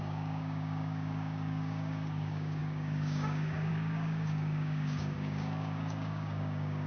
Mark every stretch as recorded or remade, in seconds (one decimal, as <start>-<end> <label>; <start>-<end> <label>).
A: 0.0-6.9 remade